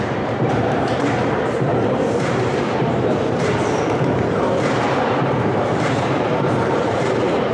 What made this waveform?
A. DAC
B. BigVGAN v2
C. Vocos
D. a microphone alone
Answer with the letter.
B